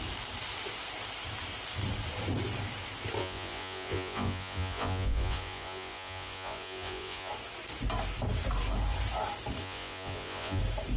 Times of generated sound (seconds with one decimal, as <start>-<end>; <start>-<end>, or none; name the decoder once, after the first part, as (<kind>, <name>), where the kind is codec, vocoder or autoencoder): 3.2-7.3 (vocoder, Vocos); 9.6-10.6